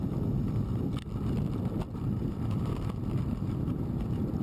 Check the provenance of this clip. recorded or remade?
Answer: recorded